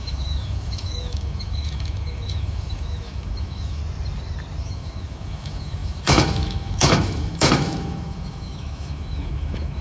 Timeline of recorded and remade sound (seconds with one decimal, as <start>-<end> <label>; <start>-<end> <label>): 0.0-3.8 remade; 3.8-4.6 recorded; 4.6-9.8 remade